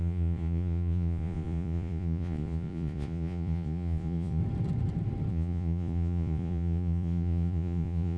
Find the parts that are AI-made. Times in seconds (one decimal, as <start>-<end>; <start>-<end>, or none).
0.0-4.4; 5.3-8.2